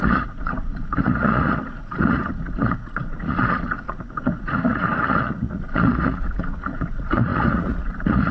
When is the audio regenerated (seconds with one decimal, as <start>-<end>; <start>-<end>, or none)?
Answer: 0.0-8.3